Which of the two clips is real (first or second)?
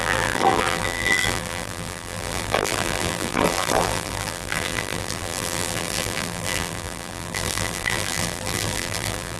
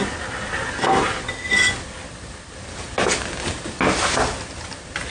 second